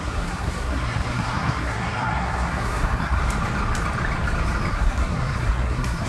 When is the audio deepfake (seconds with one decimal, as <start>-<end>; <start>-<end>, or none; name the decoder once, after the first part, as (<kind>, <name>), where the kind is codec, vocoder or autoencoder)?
0.0-3.2 (codec, SNAC); 4.7-6.1

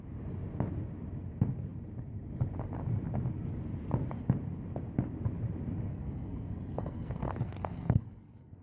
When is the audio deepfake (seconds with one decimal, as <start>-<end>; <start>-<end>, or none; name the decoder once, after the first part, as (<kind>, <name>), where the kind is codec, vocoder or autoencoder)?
5.9-8.6 (codec, SNAC)